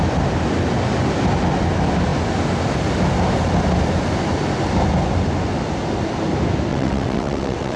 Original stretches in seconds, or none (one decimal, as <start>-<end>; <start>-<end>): 0.0-6.7